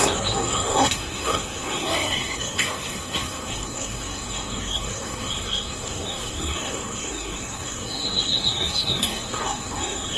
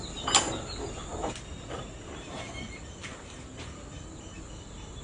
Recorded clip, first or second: second